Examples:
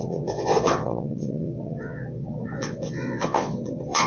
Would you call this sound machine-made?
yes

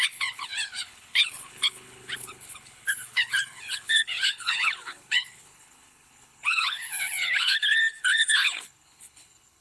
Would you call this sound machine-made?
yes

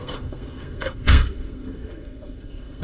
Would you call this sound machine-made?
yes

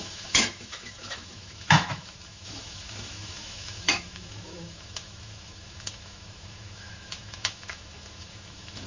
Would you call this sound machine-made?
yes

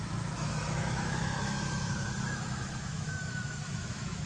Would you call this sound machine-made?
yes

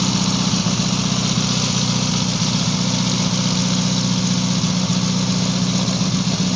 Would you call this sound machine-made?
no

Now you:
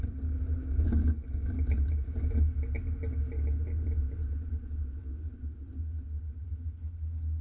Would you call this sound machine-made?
no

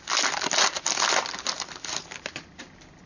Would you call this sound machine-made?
no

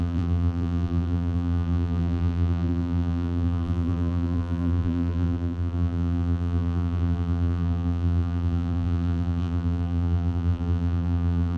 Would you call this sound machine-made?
yes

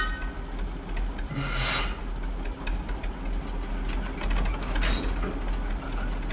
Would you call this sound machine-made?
no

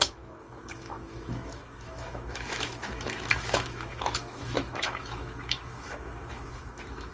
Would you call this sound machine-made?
yes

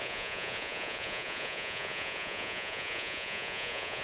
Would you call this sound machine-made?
yes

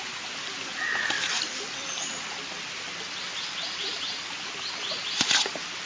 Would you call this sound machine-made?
no